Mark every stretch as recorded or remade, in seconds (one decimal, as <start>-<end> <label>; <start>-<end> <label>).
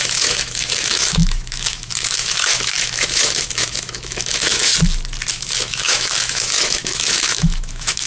0.0-4.7 remade; 4.7-5.3 recorded; 5.3-8.1 remade